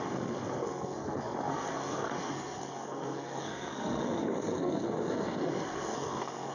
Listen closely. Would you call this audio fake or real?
fake